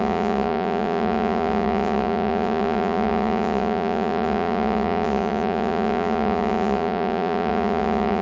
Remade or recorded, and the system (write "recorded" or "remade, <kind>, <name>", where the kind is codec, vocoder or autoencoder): remade, vocoder, Vocos